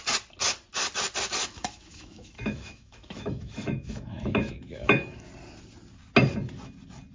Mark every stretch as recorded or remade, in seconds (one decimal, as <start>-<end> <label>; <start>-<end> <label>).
0.0-1.4 recorded; 1.4-5.3 remade; 5.3-7.1 recorded